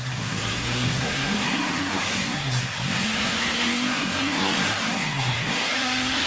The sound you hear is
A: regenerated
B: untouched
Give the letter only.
A